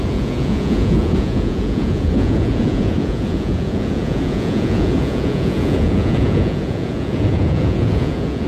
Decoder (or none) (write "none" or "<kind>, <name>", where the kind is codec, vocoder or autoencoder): vocoder, Vocos